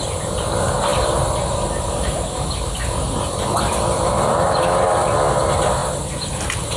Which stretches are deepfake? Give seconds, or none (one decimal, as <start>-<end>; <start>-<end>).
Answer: none